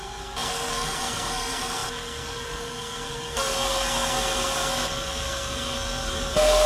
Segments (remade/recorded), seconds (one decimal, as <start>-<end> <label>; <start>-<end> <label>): 0.0-6.7 remade